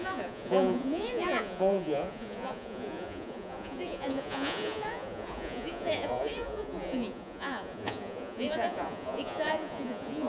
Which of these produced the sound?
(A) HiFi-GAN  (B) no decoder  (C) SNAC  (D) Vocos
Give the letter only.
D